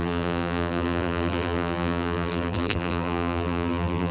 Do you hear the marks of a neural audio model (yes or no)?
yes